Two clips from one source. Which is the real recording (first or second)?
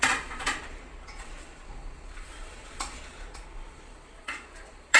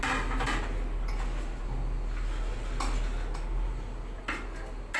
second